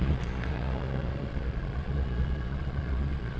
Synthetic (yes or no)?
yes